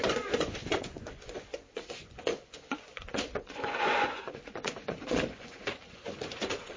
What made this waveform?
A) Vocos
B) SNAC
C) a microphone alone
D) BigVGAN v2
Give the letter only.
A